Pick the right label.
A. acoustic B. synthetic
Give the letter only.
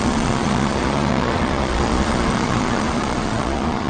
B